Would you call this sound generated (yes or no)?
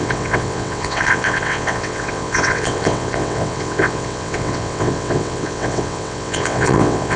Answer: yes